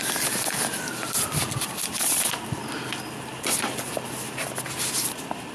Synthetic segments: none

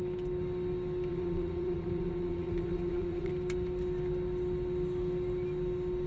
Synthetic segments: 1.1-3.3 (vocoder, WaveNeXt)